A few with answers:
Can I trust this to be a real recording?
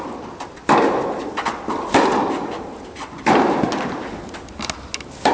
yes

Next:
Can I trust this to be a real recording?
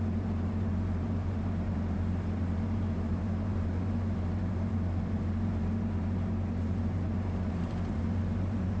no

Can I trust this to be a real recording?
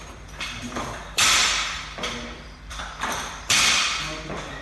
no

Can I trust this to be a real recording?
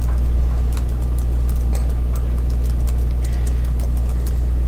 yes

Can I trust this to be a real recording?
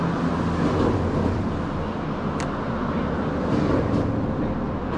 yes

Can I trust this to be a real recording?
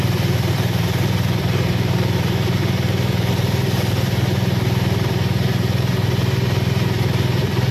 no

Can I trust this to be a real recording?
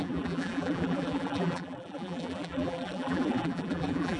no